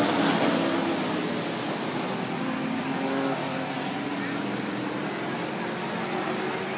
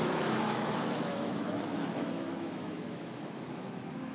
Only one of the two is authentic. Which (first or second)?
first